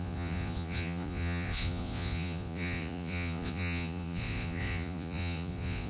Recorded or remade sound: remade